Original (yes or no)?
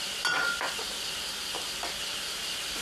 yes